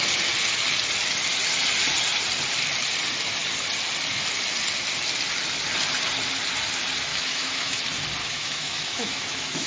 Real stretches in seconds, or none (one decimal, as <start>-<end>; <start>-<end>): 0.0-7.1; 7.8-8.2